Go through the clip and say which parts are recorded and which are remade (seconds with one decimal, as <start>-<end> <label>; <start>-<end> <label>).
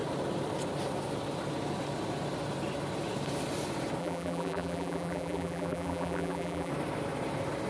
0.0-4.0 recorded; 4.0-6.7 remade; 6.7-7.7 recorded